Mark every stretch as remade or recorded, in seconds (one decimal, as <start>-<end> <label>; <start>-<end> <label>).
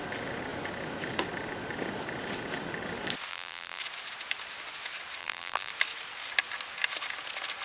0.0-3.3 recorded; 3.3-3.8 remade; 3.8-5.2 recorded; 5.2-5.7 remade; 5.7-7.6 recorded